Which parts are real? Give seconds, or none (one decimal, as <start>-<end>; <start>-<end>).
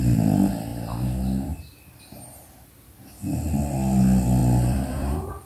0.0-0.7; 2.0-4.4